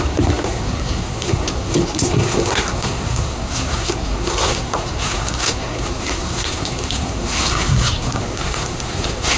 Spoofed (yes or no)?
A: yes